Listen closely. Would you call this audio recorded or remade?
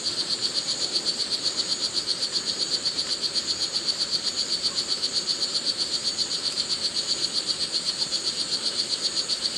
recorded